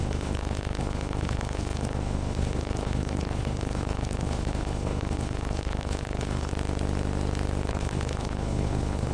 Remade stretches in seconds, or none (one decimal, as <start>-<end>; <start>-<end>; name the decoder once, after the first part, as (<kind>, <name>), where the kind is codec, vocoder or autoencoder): 0.0-6.5 (codec, HILCodec); 7.7-9.1